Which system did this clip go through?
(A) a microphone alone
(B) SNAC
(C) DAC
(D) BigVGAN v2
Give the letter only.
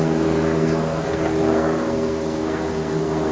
B